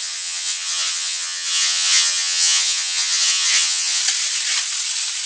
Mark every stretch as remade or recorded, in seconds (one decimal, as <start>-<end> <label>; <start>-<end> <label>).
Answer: 0.0-4.0 remade; 4.0-5.3 recorded